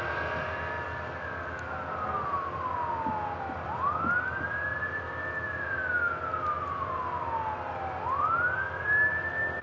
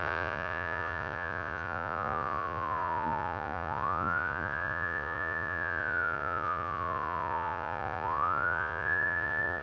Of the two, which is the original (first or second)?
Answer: first